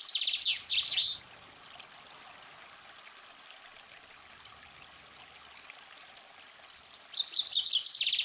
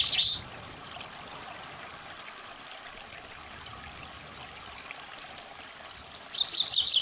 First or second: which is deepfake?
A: second